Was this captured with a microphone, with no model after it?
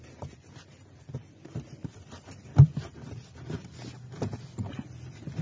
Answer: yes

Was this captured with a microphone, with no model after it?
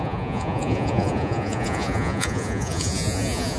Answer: no